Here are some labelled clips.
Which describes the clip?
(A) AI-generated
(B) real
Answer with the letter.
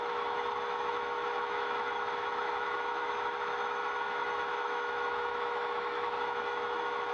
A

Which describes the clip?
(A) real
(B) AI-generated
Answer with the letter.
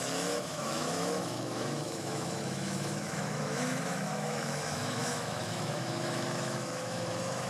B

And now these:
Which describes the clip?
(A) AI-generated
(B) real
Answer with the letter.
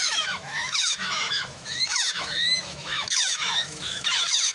A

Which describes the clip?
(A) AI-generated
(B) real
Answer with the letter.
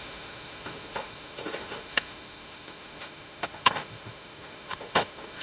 A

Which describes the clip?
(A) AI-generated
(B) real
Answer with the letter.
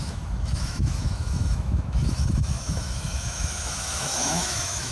A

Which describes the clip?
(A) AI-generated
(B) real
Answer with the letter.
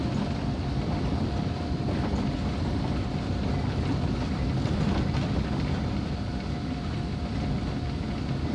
B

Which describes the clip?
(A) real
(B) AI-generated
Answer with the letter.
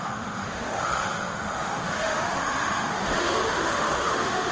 B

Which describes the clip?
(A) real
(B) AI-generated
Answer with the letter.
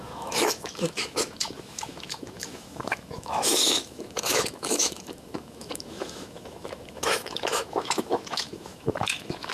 B